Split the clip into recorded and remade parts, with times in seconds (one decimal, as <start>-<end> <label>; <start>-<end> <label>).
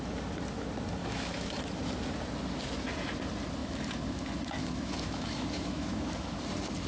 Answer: 0.0-1.0 recorded; 1.0-1.7 remade; 1.7-3.6 recorded; 3.6-6.4 remade; 6.4-6.9 recorded